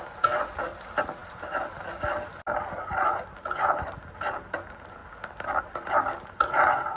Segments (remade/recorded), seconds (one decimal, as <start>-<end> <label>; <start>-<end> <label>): 0.0-5.0 recorded; 5.0-6.3 remade; 6.3-7.0 recorded